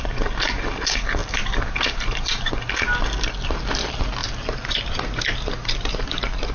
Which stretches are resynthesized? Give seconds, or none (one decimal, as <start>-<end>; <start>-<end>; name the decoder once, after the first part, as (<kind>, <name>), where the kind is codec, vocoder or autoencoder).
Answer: 1.2-2.5 (vocoder, BigVGAN v2); 4.2-6.1